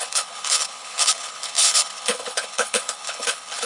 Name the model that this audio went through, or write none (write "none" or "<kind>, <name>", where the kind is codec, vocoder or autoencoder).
codec, HILCodec